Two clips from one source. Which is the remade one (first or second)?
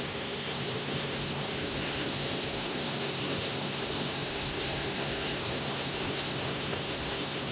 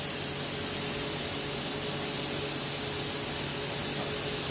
first